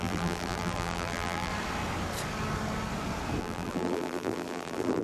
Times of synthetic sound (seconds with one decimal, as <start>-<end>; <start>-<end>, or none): 0.0-1.5; 3.4-5.0

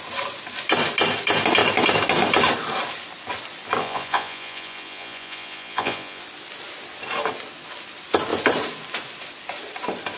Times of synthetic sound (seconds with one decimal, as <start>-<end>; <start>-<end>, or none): 3.8-6.2

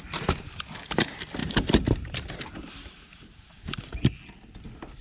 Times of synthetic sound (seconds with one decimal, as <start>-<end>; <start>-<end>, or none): 1.4-4.1